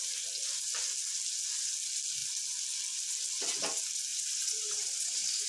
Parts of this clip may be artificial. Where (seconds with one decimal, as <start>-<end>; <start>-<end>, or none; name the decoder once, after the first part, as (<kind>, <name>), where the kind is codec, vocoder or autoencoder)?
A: 4.1-5.5 (vocoder, BigVGAN v2)